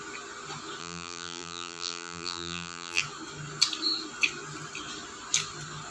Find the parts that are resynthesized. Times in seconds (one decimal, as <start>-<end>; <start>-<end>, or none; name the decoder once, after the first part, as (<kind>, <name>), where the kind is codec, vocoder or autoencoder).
0.8-3.0 (vocoder, BigVGAN v2)